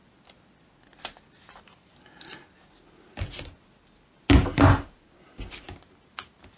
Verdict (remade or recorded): recorded